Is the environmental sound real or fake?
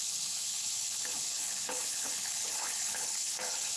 fake